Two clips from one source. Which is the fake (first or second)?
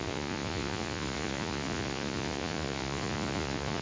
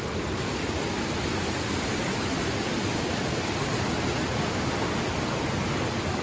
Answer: first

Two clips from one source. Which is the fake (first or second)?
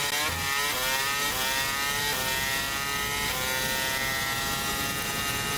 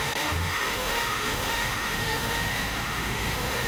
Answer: second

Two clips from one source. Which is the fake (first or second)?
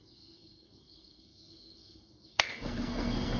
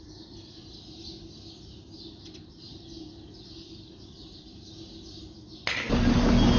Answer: first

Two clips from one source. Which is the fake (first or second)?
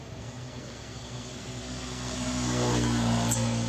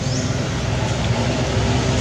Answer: first